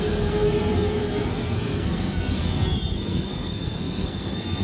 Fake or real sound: fake